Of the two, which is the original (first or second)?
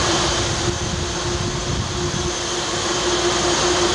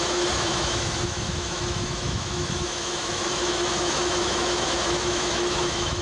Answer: first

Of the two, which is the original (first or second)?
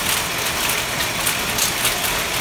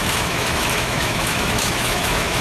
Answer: first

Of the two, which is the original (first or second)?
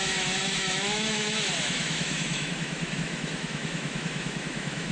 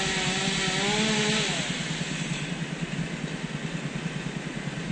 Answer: second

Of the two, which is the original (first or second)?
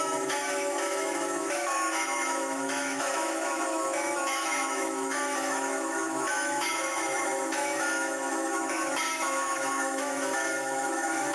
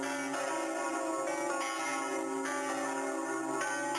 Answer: second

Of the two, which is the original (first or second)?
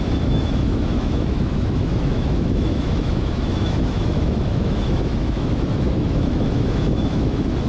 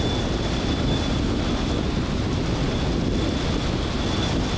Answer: second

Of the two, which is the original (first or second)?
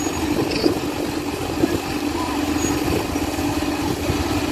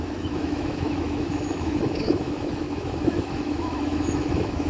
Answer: first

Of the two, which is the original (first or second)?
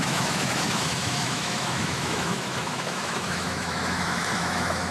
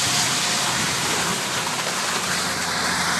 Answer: second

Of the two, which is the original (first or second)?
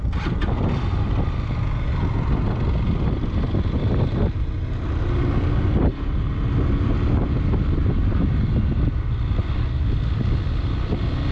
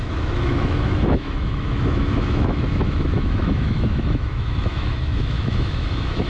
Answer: first